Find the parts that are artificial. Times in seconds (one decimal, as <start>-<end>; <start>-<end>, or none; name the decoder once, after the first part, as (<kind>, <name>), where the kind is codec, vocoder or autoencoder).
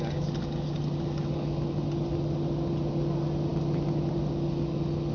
none